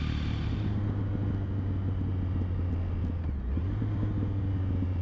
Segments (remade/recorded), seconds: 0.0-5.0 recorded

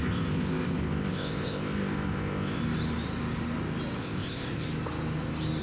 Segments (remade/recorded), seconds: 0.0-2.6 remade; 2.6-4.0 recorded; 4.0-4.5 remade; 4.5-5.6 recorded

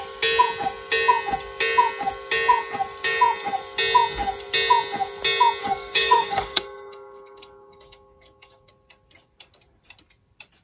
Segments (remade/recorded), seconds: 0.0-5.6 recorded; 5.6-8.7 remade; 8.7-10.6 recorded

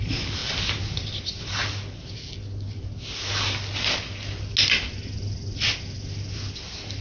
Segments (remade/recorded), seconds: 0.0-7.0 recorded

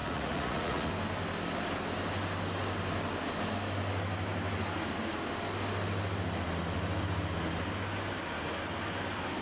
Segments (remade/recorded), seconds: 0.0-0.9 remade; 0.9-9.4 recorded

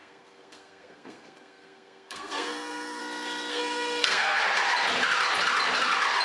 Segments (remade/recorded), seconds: 0.0-3.0 remade; 3.0-3.5 recorded; 3.5-4.4 remade; 4.4-6.2 recorded

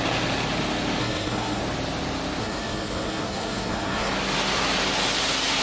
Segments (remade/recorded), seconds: 0.0-1.0 recorded; 1.0-1.6 remade; 1.6-2.4 recorded; 2.4-4.1 remade; 4.1-5.6 recorded